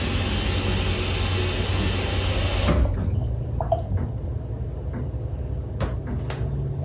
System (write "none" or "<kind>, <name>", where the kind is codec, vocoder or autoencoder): none